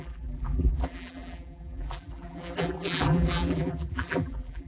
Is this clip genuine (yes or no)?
no